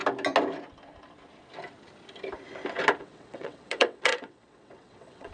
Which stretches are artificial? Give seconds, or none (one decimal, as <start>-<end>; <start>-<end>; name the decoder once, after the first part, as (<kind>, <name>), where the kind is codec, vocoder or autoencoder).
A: 3.0-5.3 (vocoder, WaveNeXt)